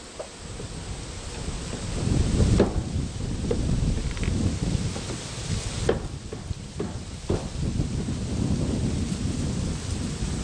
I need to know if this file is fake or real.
real